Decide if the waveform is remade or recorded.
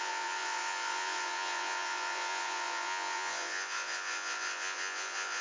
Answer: remade